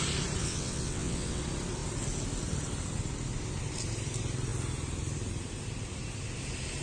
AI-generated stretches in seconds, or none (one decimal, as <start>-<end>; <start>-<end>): 0.4-1.4